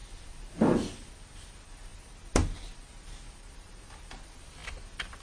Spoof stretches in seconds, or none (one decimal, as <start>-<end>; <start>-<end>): none